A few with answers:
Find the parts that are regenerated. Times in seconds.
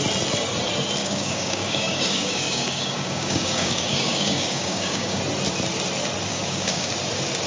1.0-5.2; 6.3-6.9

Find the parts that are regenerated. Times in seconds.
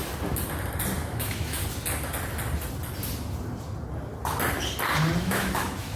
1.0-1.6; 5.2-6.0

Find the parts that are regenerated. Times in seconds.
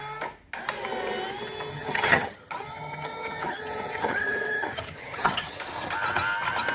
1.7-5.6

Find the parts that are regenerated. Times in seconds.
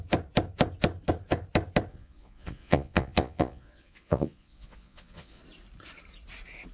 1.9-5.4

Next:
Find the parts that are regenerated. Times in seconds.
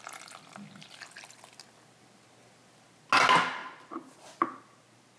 none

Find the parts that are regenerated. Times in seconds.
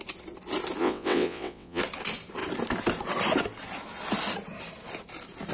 0.8-1.8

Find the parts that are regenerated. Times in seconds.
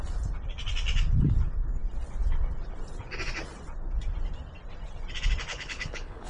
5.5-6.3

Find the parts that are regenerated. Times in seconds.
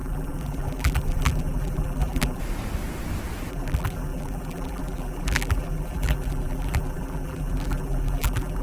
0.0-2.4; 3.5-8.6